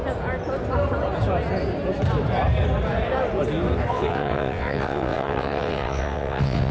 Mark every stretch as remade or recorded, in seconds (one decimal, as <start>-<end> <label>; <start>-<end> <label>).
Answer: 0.0-3.9 recorded; 3.9-6.7 remade